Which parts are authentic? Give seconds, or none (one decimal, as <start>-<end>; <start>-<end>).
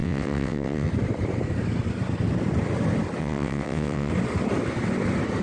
0.9-3.2; 4.1-5.4